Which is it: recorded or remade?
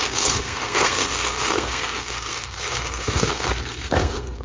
remade